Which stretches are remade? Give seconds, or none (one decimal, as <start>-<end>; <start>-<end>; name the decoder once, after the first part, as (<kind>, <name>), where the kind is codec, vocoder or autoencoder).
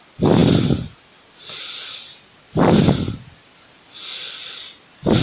none